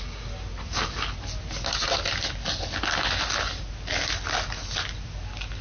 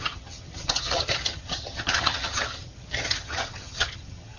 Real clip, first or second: first